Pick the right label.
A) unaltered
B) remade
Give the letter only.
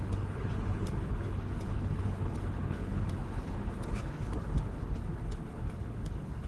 B